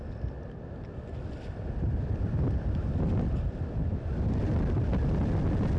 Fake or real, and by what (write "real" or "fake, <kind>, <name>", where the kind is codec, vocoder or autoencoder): real